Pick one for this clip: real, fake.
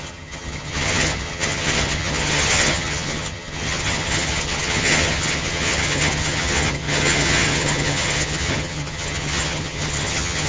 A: fake